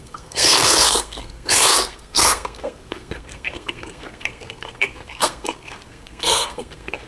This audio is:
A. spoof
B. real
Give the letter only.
A